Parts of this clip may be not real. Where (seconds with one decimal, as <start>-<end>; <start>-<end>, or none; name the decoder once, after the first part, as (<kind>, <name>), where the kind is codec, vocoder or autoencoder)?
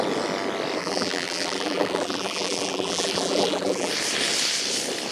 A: 0.8-3.9 (vocoder, BigVGAN v2)